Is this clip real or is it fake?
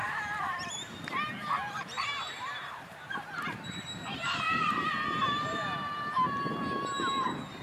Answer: fake